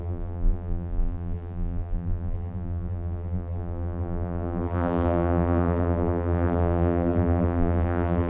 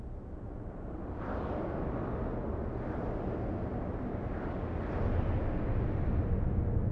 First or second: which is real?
second